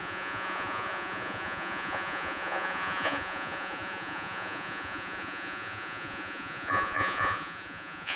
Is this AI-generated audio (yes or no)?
yes